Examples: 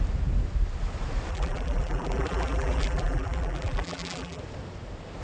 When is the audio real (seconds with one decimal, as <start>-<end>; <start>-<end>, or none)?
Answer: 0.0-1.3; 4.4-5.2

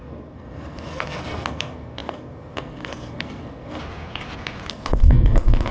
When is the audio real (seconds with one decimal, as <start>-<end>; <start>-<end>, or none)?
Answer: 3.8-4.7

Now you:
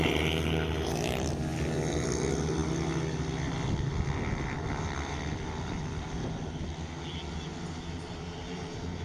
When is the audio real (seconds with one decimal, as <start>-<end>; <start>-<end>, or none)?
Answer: 0.0-9.0

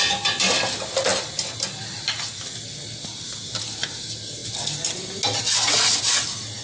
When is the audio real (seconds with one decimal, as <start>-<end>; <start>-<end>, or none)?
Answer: 0.0-6.6